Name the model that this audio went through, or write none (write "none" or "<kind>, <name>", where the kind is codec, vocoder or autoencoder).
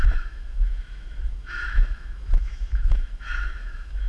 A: autoencoder, DAC-VAE